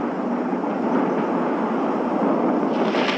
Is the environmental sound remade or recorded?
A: recorded